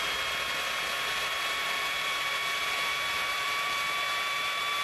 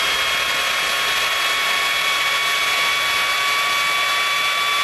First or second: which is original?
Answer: second